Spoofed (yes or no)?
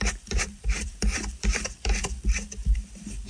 yes